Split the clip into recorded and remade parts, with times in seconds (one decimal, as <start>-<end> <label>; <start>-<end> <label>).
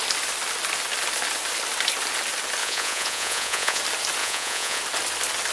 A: 0.0-2.6 recorded; 2.6-3.8 remade; 3.8-4.2 recorded; 4.2-4.8 remade; 4.8-5.5 recorded